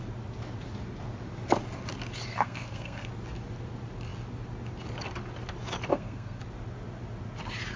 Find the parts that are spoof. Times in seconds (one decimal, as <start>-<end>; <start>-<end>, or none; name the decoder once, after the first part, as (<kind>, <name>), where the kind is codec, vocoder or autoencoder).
2.3-3.1 (codec, SNAC); 5.9-6.4